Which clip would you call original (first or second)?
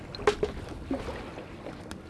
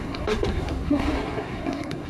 first